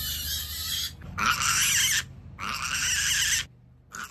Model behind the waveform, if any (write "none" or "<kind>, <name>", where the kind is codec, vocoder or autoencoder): none